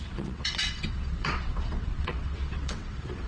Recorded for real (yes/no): no